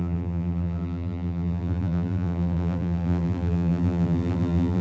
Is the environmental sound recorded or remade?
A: remade